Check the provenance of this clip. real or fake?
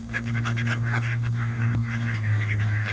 fake